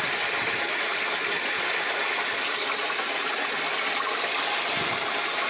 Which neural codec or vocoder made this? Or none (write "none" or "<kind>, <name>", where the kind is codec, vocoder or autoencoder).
none